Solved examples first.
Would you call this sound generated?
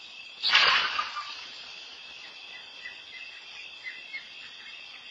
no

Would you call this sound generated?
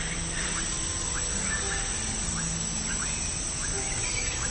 no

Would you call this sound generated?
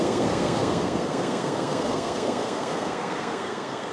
yes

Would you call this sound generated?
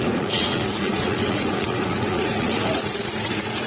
yes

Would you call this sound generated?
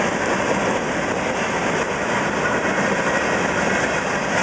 no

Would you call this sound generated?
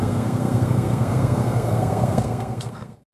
yes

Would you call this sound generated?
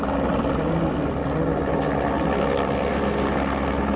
no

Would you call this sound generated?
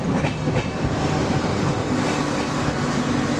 no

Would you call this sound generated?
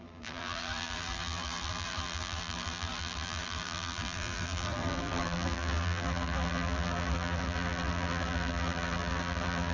yes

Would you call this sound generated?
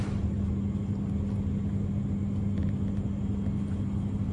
no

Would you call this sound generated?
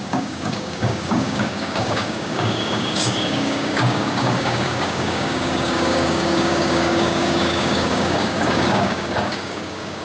yes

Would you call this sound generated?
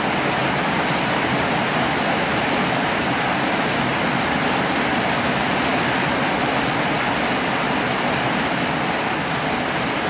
no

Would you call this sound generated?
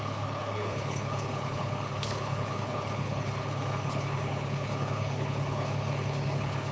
yes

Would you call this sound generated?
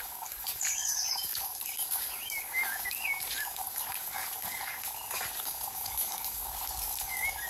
yes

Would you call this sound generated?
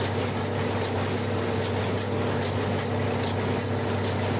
no